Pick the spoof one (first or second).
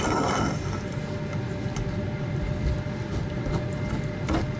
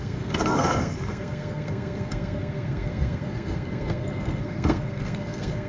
second